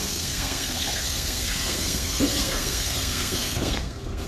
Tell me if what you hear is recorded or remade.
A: remade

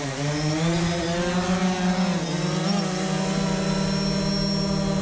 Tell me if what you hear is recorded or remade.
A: recorded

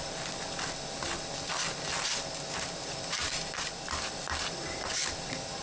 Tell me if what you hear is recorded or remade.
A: recorded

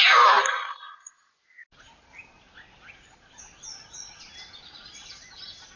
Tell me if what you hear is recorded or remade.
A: recorded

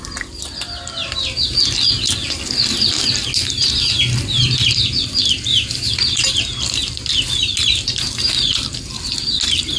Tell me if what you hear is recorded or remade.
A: recorded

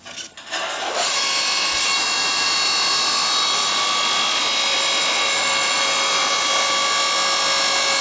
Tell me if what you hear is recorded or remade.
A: recorded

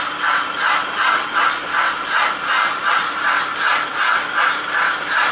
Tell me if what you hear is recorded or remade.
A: recorded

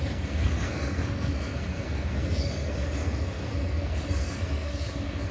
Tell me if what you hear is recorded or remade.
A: remade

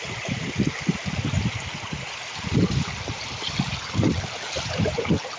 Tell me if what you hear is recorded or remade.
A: recorded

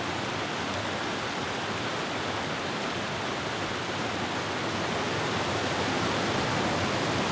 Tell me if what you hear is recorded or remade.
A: recorded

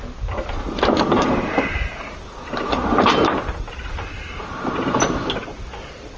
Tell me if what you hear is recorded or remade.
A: recorded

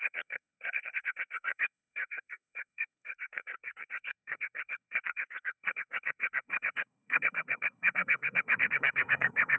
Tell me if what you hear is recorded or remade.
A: remade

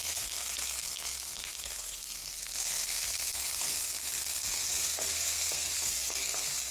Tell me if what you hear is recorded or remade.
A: remade